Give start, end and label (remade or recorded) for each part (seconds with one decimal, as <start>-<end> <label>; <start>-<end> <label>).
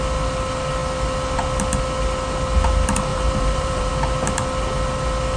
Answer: 0.0-3.1 recorded; 3.1-3.9 remade; 3.9-5.4 recorded